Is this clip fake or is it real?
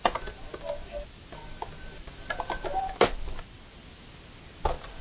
real